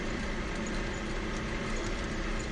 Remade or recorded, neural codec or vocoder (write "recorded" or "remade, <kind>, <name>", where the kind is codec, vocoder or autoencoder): remade, vocoder, BigVGAN v2